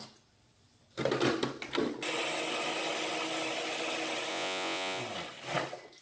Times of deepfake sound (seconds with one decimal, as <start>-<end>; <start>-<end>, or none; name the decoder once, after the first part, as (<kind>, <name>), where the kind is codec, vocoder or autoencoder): 4.3-5.0 (vocoder, Vocos)